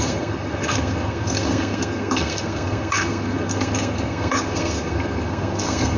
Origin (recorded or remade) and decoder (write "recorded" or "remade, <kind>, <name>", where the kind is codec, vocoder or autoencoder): remade, codec, SNAC